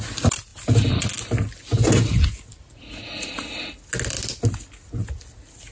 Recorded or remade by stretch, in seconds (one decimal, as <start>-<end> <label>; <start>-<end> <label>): 0.0-5.7 recorded